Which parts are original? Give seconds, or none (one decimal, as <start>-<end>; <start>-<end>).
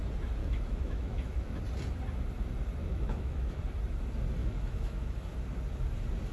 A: 0.0-0.4; 1.6-2.8; 3.6-4.4; 5.3-6.3